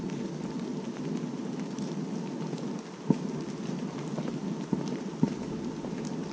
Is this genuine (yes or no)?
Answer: yes